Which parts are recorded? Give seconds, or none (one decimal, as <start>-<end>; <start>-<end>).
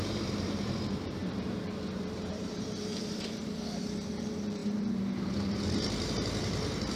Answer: none